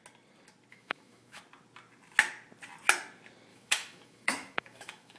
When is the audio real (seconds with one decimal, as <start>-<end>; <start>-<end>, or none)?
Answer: 0.0-0.7; 1.4-3.5